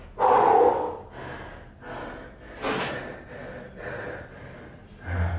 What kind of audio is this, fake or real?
real